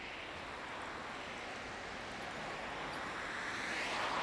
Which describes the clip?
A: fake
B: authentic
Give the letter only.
B